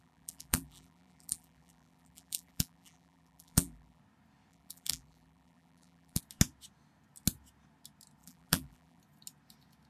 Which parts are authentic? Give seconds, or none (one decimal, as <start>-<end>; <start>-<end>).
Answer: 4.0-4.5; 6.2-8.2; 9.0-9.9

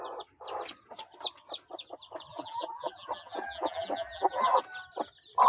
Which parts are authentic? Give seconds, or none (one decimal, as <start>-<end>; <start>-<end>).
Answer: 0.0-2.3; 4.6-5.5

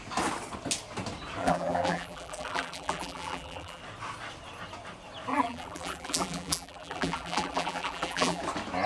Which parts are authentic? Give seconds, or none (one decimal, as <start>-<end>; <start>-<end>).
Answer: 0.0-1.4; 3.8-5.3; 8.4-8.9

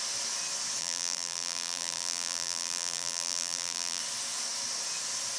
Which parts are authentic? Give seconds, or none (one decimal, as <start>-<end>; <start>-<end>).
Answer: 0.0-0.8; 4.0-5.4

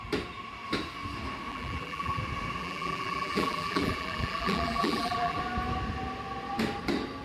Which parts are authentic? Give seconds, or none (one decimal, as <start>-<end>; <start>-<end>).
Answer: 0.0-1.5; 2.2-2.6; 5.4-7.2

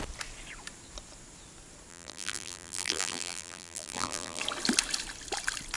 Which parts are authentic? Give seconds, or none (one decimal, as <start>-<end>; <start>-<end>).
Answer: 0.0-1.9; 4.4-5.8